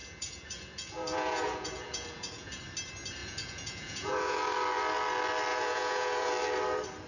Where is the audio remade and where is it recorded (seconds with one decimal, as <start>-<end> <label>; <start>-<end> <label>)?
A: 0.0-2.6 remade; 2.6-3.2 recorded; 3.2-4.4 remade; 4.4-5.5 recorded; 5.5-6.3 remade; 6.3-7.1 recorded